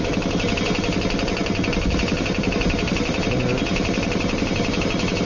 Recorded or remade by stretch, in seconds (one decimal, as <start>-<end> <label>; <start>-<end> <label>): 0.0-1.4 recorded; 1.4-3.3 remade; 3.3-3.7 recorded; 3.7-4.8 remade; 4.8-5.2 recorded